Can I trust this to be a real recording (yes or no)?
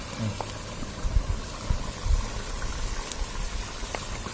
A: yes